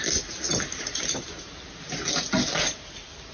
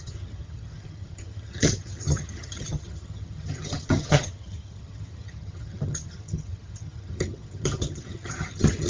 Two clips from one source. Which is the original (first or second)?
first